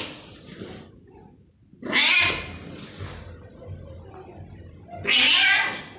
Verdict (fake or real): real